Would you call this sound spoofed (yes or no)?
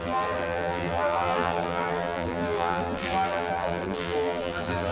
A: yes